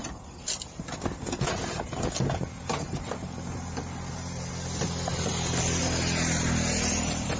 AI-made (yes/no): no